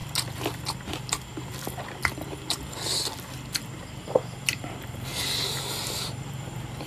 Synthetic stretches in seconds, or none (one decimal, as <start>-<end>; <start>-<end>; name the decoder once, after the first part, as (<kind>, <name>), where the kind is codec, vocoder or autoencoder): 4.1-5.1 (vocoder, BigVGAN v2); 6.2-6.9